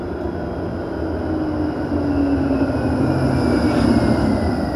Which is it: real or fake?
real